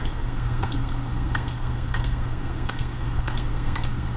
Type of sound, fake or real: fake